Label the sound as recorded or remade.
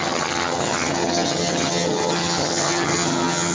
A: remade